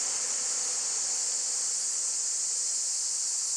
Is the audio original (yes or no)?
yes